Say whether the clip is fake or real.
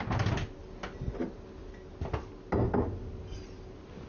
real